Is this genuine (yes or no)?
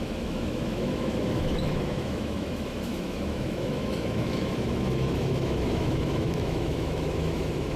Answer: no